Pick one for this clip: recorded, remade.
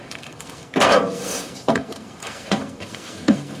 remade